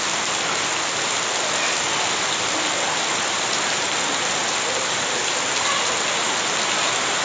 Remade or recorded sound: recorded